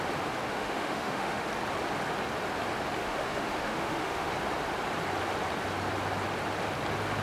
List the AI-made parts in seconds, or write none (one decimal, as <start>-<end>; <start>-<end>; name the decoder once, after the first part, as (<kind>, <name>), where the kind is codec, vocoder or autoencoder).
0.5-1.5 (autoencoder, DAC-VAE); 3.0-4.3